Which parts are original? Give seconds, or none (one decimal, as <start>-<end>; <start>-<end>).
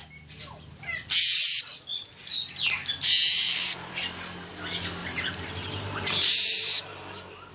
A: 0.0-2.8; 3.9-5.0